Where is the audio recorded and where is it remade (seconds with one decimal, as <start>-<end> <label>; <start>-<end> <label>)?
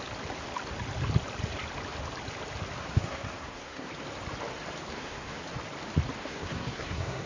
0.0-2.8 recorded; 2.8-3.9 remade; 3.9-4.9 recorded; 4.9-5.4 remade; 5.4-6.2 recorded; 6.2-7.3 remade